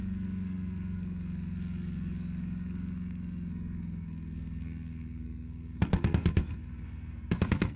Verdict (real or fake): fake